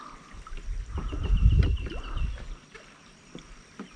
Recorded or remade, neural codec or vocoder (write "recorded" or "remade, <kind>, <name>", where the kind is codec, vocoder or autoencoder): recorded